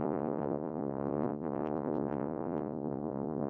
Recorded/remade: remade